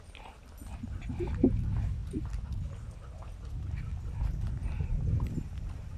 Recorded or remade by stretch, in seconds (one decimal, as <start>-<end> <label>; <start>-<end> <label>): 0.0-6.0 recorded